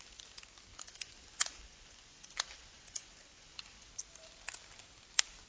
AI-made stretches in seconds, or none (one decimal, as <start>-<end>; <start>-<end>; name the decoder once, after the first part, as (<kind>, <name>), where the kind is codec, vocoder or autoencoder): 0.7-3.9 (vocoder, Vocos)